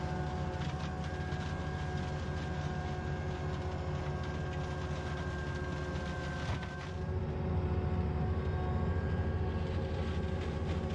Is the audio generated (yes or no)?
no